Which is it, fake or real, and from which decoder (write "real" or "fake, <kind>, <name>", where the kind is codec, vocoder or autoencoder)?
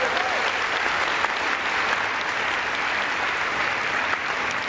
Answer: real